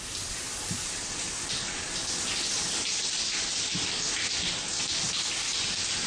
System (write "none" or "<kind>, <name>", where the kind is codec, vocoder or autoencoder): none